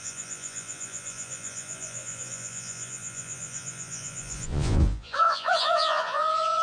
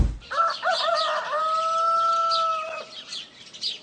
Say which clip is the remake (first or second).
first